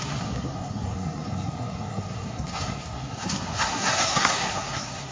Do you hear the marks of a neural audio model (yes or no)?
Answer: yes